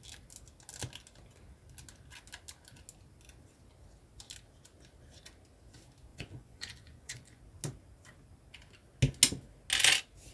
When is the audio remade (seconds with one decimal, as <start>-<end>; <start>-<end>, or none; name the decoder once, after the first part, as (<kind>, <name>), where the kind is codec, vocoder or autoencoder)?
6.1-7.4 (vocoder, Vocos)